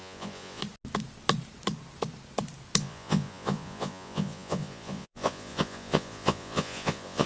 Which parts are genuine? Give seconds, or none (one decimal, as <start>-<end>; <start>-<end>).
0.6-2.8